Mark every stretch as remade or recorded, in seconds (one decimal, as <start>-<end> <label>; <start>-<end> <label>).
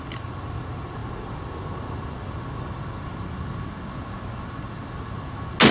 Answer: 0.0-5.7 recorded